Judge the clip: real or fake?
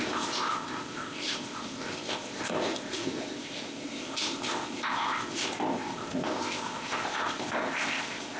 fake